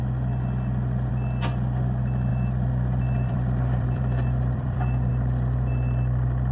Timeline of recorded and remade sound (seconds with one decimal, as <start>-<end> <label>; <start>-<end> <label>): 0.0-2.3 recorded; 2.3-5.1 remade; 5.1-6.5 recorded

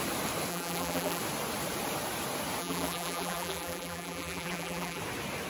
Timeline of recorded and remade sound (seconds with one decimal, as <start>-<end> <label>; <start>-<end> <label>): 0.0-0.5 recorded; 0.5-1.2 remade; 1.2-2.6 recorded; 2.6-5.0 remade; 5.0-5.5 recorded

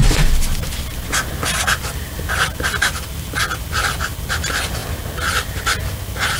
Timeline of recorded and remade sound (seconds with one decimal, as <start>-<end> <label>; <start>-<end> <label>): 0.0-6.4 recorded

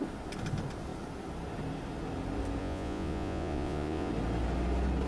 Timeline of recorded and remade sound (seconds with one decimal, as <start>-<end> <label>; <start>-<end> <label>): 0.0-2.6 recorded; 2.6-4.1 remade; 4.1-5.1 recorded

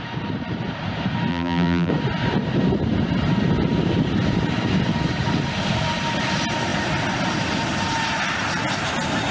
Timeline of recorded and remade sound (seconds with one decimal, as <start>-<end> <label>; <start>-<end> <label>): 0.0-1.3 recorded; 1.3-1.9 remade; 1.9-9.3 recorded

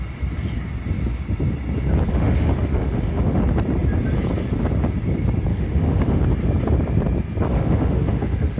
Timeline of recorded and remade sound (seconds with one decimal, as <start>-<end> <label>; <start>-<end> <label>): 0.0-2.1 recorded; 2.1-3.4 remade; 3.4-5.5 recorded; 5.5-6.2 remade; 6.2-7.5 recorded; 7.5-8.6 remade